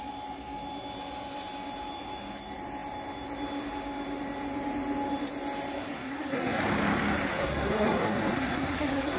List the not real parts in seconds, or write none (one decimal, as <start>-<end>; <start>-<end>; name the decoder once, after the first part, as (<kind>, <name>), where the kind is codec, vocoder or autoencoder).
5.9-6.6 (codec, SNAC); 7.3-9.2